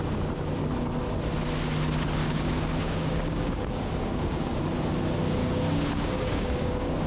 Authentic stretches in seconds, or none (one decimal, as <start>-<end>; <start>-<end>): 0.0-2.2; 4.6-5.4